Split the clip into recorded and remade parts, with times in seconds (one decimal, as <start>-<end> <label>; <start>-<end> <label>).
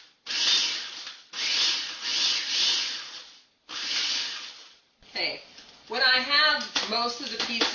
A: 0.0-7.7 recorded